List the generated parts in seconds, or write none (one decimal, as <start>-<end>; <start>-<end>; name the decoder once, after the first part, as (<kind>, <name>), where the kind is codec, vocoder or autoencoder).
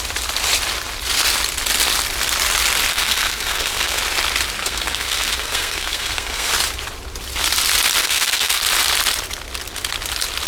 2.9-4.0 (codec, SNAC); 4.6-6.5; 8.0-8.6